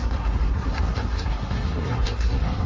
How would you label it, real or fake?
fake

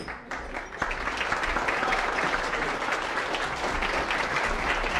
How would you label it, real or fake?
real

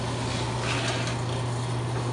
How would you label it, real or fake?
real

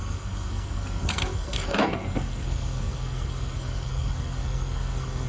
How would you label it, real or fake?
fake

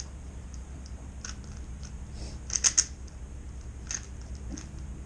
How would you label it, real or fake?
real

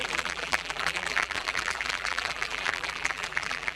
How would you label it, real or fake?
fake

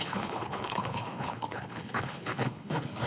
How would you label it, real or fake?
fake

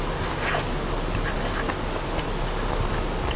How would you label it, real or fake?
real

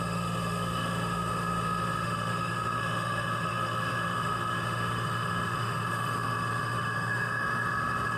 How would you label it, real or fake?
fake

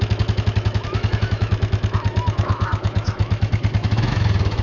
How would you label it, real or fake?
fake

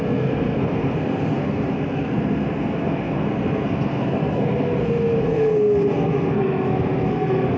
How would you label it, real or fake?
fake